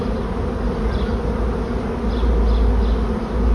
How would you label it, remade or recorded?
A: recorded